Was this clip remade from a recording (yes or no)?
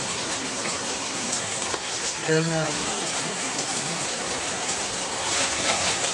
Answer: yes